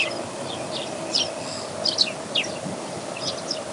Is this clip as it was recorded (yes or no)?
yes